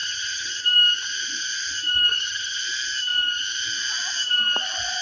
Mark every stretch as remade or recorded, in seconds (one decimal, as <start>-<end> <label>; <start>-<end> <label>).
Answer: 0.0-0.6 remade; 0.6-2.1 recorded; 2.1-2.6 remade; 2.6-5.0 recorded